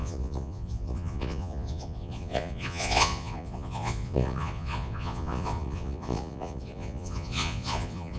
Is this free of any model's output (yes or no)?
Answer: no